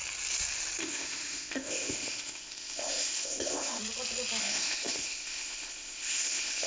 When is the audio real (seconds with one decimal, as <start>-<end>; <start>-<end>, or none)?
0.0-0.8; 3.8-4.4